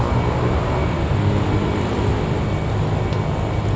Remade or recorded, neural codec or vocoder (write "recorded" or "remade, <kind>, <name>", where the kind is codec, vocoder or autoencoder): recorded